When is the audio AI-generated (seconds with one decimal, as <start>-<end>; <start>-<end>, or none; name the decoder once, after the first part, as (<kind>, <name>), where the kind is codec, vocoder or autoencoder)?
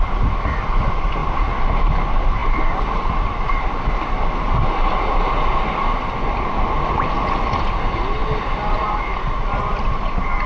none